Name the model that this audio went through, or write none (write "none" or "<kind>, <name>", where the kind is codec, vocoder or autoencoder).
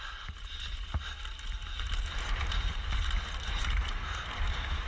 none